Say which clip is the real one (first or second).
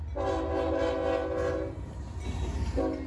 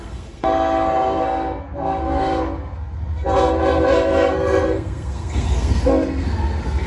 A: first